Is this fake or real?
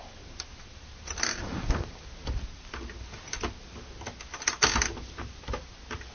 real